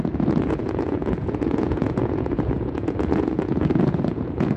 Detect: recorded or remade remade